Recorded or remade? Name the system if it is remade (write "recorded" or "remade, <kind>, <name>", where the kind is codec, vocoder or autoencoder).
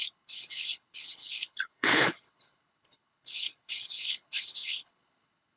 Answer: remade, codec, HILCodec